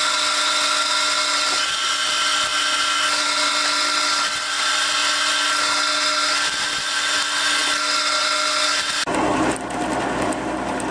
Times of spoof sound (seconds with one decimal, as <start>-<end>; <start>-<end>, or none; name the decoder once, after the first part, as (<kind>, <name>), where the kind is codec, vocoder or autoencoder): none